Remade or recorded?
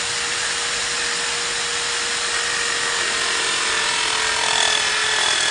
recorded